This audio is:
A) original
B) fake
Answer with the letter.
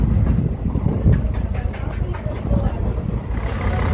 A